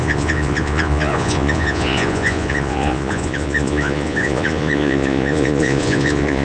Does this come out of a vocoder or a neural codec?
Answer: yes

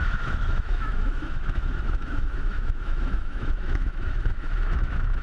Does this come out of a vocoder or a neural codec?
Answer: yes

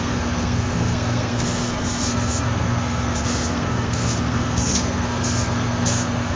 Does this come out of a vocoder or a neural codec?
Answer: yes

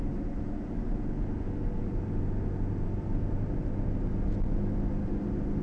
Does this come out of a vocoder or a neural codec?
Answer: no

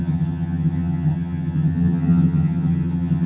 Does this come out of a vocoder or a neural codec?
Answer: yes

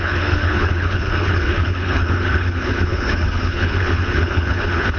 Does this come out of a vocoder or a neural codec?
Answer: yes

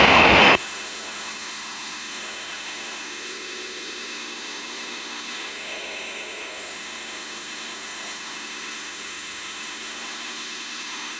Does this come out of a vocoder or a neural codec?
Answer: yes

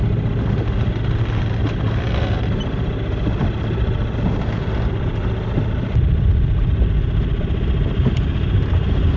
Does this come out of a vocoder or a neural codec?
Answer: no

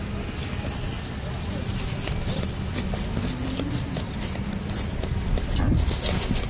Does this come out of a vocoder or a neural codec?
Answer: no